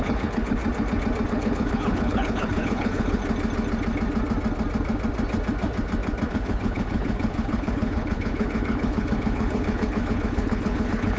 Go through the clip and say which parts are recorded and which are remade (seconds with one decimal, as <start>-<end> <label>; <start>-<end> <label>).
0.0-0.6 remade; 0.6-1.3 recorded; 1.3-3.2 remade; 3.2-6.3 recorded; 6.3-11.2 remade